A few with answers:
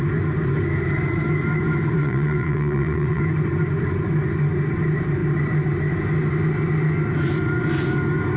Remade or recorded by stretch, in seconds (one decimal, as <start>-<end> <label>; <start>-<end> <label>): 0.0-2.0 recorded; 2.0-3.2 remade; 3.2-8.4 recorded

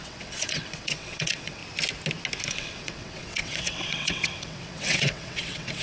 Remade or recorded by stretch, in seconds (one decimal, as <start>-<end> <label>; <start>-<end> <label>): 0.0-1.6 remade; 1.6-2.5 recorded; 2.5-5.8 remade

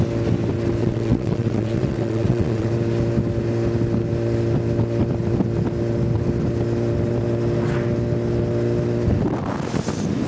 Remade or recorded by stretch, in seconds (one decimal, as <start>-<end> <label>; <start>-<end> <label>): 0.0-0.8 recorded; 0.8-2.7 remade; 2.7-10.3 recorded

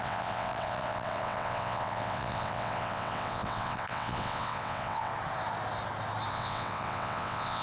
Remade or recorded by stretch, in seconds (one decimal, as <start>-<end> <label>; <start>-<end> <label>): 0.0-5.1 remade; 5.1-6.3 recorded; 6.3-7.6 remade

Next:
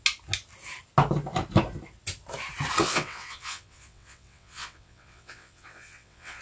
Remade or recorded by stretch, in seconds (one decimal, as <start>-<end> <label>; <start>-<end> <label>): 0.0-2.8 recorded; 2.8-6.4 remade